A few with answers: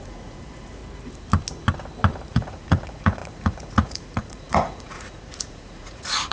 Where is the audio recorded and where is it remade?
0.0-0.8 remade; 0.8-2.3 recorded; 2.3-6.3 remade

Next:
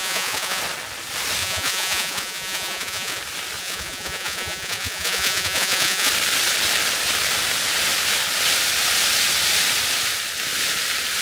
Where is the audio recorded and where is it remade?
0.0-0.6 remade; 0.6-1.4 recorded; 1.4-3.2 remade; 3.2-3.6 recorded; 3.6-6.1 remade; 6.1-11.2 recorded

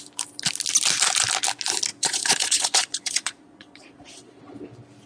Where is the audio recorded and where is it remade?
0.0-1.9 recorded; 1.9-4.4 remade; 4.4-5.1 recorded

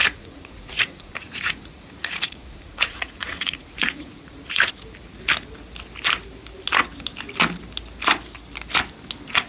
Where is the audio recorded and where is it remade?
0.0-4.7 remade; 4.7-9.5 recorded

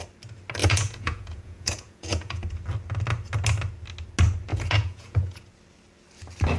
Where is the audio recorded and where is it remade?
0.0-0.6 recorded; 0.6-2.4 remade; 2.4-4.5 recorded; 4.5-5.4 remade; 5.4-6.6 recorded

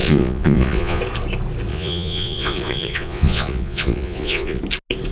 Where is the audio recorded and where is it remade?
0.0-1.0 remade; 1.0-1.7 recorded; 1.7-4.6 remade; 4.6-5.1 recorded

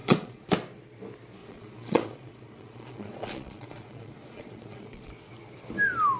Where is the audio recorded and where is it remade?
0.0-0.5 remade; 0.5-1.4 recorded; 1.4-5.1 remade; 5.1-6.2 recorded